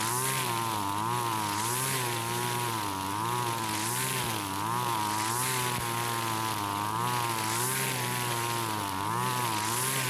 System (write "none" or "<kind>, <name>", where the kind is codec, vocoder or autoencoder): none